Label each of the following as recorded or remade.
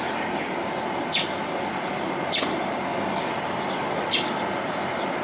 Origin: recorded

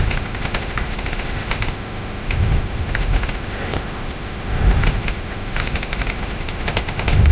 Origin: remade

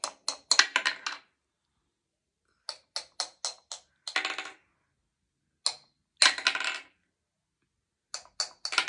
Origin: recorded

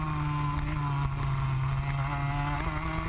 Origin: recorded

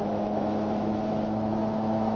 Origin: remade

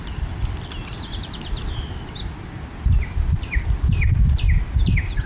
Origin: recorded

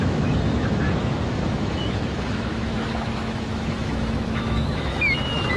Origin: remade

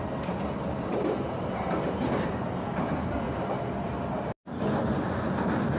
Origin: recorded